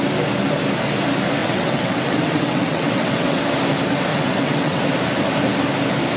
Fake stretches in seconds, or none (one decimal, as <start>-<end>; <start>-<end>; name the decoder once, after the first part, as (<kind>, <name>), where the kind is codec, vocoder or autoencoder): 1.4-3.4 (vocoder, WaveNeXt); 4.1-4.8